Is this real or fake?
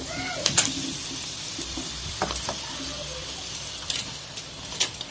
real